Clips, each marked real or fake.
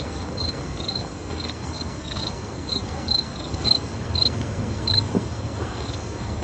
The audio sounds fake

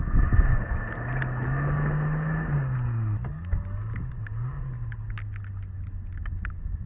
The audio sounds real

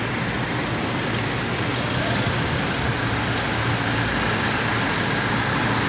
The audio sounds real